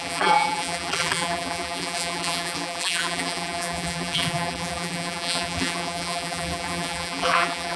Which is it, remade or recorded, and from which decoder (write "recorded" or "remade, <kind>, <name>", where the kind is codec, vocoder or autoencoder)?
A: remade, vocoder, BigVGAN v2